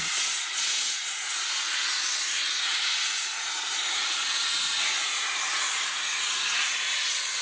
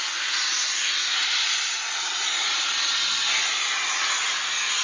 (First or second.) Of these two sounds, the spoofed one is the first